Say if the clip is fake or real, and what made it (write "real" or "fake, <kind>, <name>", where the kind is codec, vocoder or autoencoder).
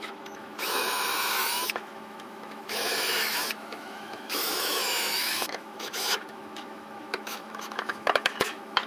fake, autoencoder, DAC-VAE